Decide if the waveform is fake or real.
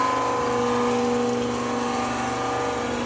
real